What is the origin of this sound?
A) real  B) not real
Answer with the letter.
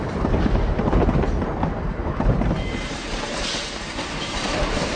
B